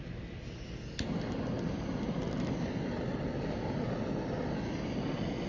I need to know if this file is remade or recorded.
recorded